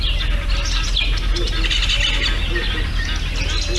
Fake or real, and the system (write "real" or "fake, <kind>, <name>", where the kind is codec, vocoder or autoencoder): real